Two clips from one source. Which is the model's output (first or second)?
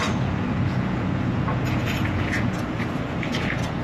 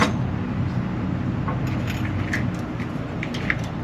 first